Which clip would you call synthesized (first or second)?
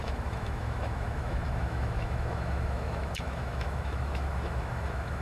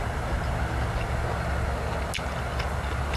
first